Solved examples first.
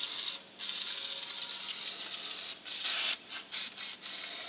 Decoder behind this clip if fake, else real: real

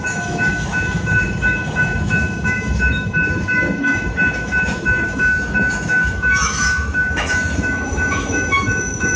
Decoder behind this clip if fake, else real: fake, autoencoder, DAC-VAE